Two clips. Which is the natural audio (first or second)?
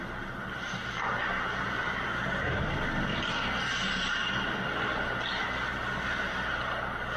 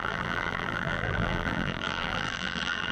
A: first